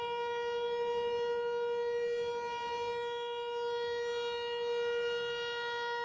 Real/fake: real